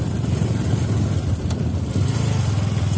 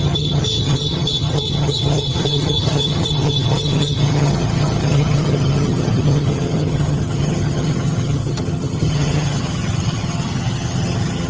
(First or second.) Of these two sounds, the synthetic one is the second